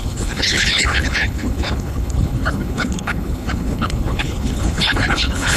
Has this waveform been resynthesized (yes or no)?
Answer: yes